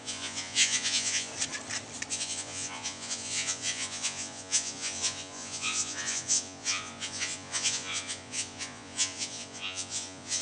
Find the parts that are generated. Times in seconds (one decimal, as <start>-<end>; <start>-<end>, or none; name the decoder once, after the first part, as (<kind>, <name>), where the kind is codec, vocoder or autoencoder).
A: 0.0-1.3 (vocoder, Vocos); 2.1-10.4